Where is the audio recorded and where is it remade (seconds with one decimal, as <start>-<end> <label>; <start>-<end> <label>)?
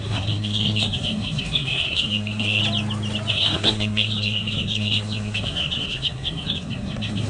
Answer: 0.0-2.6 remade; 2.6-3.3 recorded; 3.3-7.3 remade